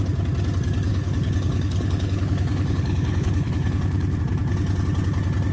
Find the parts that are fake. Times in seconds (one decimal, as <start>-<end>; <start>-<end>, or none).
0.9-4.2